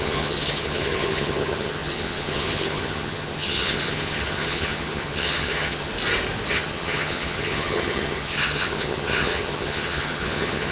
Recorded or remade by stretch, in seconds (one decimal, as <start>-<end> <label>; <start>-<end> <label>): 0.0-5.9 remade; 5.9-6.5 recorded; 6.5-10.7 remade